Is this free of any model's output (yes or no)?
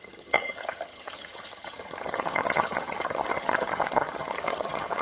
no